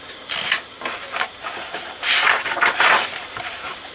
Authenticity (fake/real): real